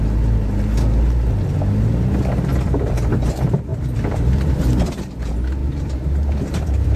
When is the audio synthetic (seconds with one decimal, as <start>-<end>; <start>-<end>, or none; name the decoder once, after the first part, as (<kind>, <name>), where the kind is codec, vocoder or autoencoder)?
2.5-3.1 (vocoder, BigVGAN v2); 3.7-4.9; 5.6-7.0